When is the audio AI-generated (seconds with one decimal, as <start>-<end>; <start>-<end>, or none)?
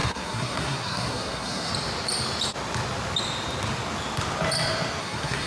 0.0-1.7; 5.0-5.5